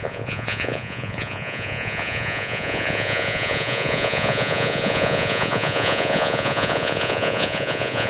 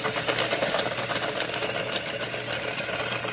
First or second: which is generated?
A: first